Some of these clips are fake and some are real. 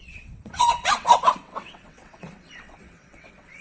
fake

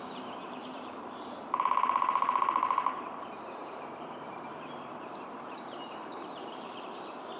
fake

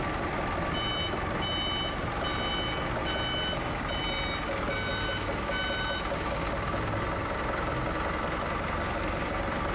real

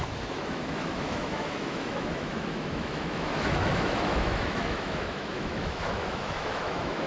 fake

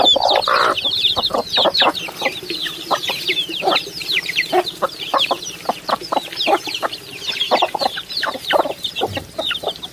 fake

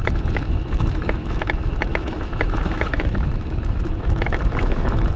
fake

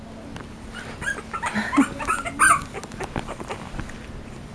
real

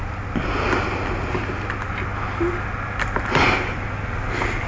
real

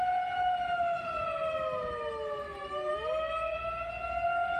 real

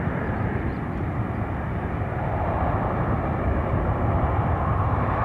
fake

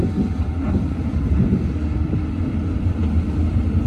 fake